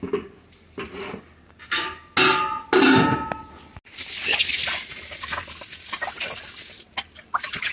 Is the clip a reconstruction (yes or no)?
no